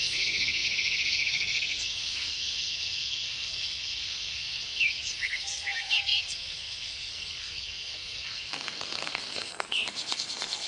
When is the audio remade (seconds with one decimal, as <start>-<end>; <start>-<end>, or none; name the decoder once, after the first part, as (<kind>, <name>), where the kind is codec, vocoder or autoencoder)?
0.0-10.7 (codec, SNAC)